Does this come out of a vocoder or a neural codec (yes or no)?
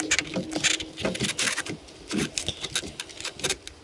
no